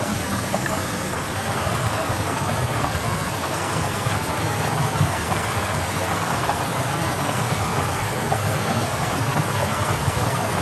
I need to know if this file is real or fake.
fake